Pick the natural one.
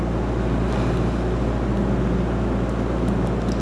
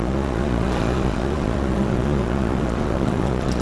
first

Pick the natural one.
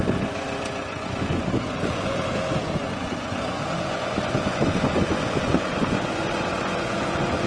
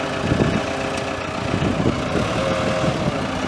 second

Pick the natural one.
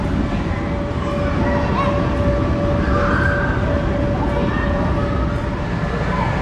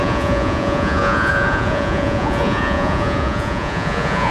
first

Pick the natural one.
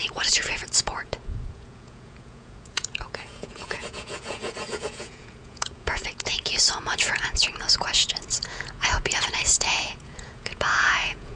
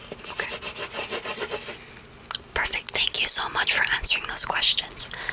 second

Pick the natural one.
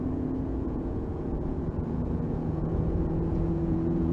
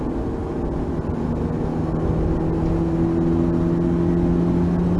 second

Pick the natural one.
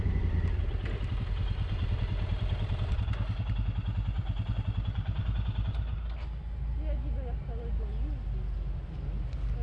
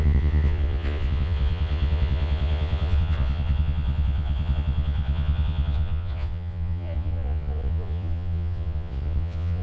first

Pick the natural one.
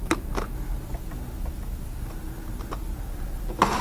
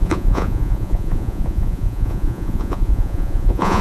first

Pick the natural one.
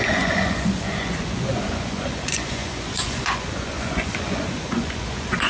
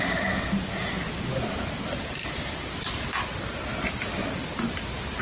second